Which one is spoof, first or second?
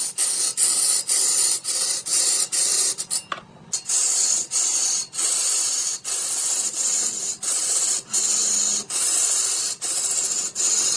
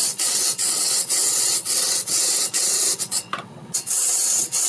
second